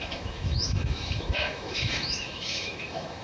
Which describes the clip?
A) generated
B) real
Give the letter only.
A